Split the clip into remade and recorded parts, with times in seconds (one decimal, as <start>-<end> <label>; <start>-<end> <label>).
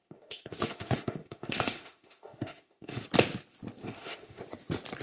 0.0-3.0 remade; 3.0-3.8 recorded; 3.8-4.4 remade; 4.4-5.0 recorded